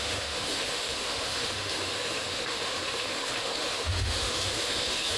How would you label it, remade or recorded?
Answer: remade